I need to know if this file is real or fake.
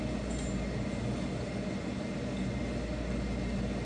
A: real